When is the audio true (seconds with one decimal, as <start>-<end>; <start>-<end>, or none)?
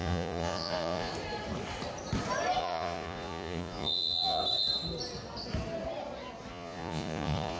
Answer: 1.1-2.6; 4.4-6.5